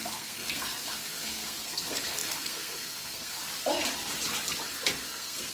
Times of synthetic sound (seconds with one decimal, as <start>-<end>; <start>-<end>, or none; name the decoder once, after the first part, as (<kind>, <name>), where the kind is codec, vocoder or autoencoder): 0.0-3.4 (codec, SNAC); 5.1-5.5